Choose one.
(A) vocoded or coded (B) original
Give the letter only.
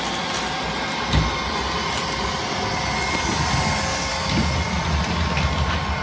B